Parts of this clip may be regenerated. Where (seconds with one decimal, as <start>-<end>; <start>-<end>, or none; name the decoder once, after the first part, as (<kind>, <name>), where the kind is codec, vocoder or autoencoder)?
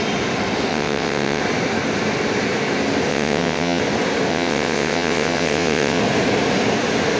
0.7-1.4 (vocoder, WaveNeXt); 3.1-3.8; 4.3-6.0